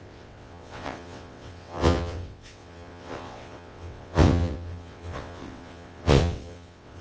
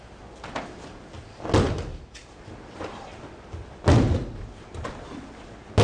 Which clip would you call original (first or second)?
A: second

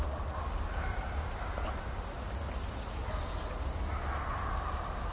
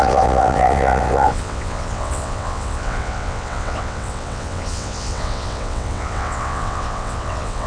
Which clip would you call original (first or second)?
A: first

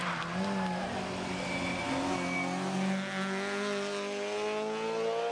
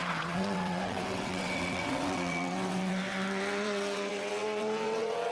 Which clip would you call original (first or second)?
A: first